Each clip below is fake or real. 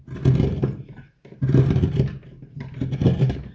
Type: real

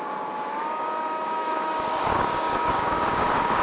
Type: fake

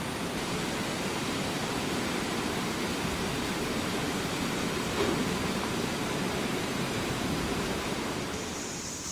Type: fake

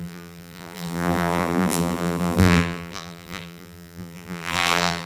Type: fake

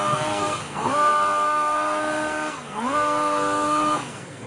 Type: fake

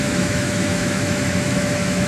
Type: fake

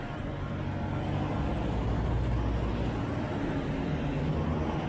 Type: real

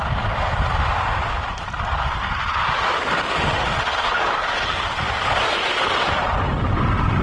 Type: real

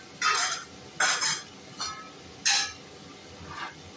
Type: real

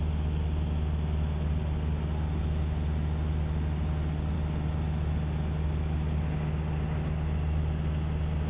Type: real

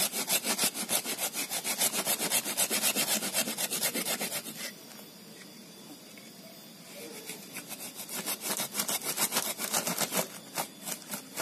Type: real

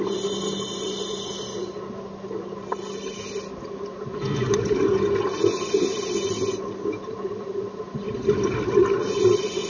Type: real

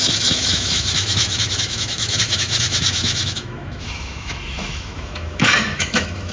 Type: fake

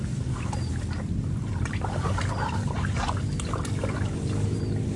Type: real